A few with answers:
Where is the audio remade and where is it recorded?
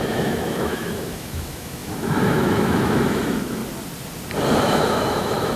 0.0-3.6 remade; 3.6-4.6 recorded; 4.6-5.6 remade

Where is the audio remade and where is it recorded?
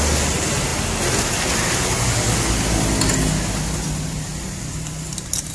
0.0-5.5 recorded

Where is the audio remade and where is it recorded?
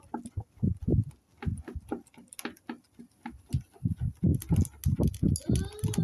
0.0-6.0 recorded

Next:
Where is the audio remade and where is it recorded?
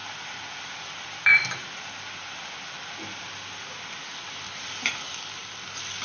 0.0-0.8 recorded; 0.8-1.6 remade; 1.6-4.6 recorded; 4.6-6.0 remade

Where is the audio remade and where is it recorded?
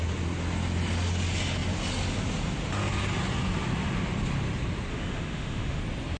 0.0-4.9 recorded; 4.9-5.8 remade; 5.8-6.2 recorded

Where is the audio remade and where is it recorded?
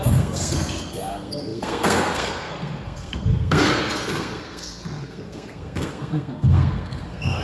0.0-7.4 remade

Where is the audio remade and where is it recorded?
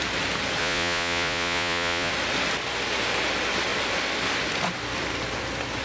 0.0-0.6 recorded; 0.6-2.1 remade; 2.1-5.8 recorded